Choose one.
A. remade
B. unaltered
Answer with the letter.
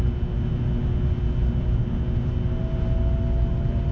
B